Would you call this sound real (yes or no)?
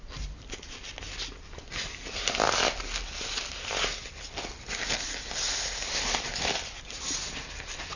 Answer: yes